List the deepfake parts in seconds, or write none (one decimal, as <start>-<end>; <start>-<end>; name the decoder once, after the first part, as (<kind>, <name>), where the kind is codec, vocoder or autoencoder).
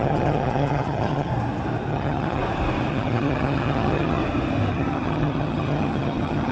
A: 0.0-1.3 (vocoder, HiFi-GAN); 1.9-2.4; 2.9-4.2; 4.7-6.5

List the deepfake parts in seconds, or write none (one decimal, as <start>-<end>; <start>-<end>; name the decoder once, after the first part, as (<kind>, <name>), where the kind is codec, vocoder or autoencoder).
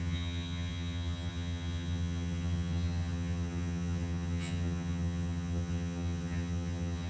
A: 0.0-7.1 (vocoder, HiFi-GAN)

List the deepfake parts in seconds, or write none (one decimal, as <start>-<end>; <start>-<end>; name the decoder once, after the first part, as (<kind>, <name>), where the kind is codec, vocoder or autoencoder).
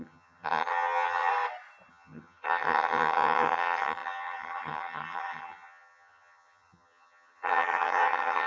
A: 0.0-1.3 (vocoder, HiFi-GAN); 1.9-8.5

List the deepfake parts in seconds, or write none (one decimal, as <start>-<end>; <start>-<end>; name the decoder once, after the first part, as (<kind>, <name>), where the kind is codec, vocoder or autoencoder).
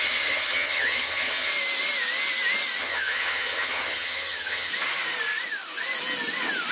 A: 0.0-1.5 (vocoder, HiFi-GAN); 2.8-4.7